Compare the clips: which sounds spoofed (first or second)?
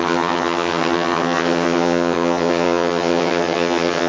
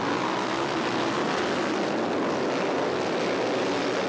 first